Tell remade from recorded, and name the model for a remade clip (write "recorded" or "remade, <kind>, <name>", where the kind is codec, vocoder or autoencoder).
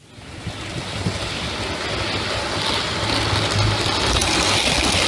recorded